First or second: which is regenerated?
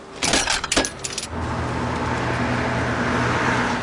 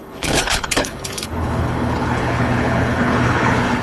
second